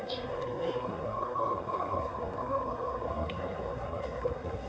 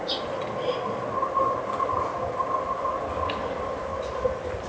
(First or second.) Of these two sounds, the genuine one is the second